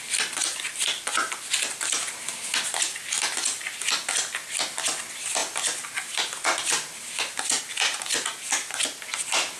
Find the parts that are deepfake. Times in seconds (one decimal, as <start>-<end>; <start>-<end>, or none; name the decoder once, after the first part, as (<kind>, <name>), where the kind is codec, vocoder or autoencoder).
none